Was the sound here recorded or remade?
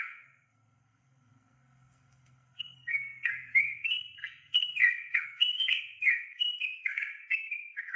remade